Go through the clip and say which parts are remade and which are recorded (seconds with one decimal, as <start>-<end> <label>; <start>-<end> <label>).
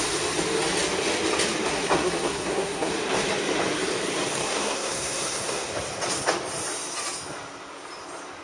0.0-1.7 recorded; 1.7-2.9 remade; 2.9-4.4 recorded; 4.4-5.7 remade; 5.7-8.4 recorded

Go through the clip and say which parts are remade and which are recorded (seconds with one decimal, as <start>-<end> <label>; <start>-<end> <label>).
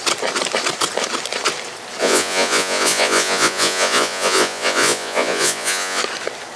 0.0-2.0 recorded; 2.0-6.0 remade; 6.0-6.6 recorded